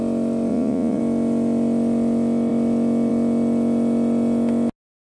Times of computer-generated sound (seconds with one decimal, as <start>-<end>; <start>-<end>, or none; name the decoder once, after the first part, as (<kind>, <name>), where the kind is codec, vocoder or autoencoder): 0.5-1.0 (vocoder, Vocos)